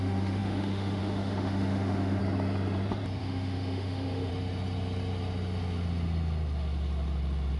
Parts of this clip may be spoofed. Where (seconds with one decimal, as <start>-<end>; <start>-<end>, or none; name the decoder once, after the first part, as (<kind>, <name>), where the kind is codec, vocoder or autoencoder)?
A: 0.0-2.2 (autoencoder, DAC-VAE); 3.2-4.3